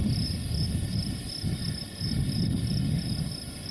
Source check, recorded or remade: recorded